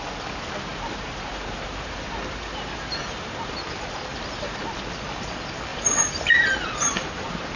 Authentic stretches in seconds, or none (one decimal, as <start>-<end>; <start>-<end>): 0.0-0.7; 3.5-4.1; 4.8-5.7; 6.4-7.6